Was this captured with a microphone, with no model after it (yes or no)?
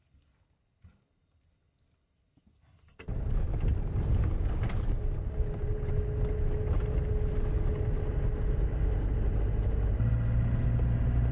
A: yes